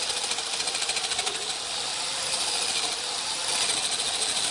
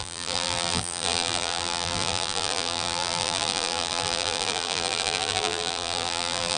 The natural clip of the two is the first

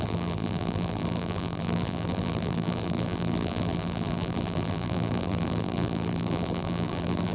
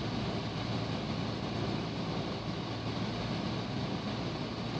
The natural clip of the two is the second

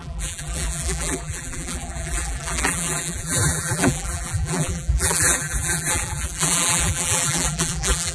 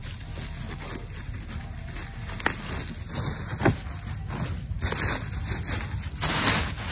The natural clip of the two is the second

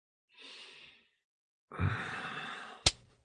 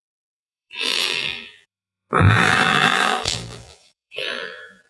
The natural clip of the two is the first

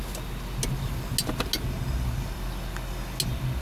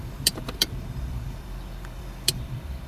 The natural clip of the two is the first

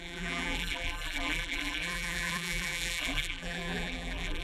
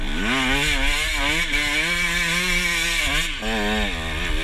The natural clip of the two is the second